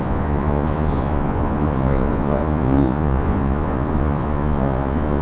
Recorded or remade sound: remade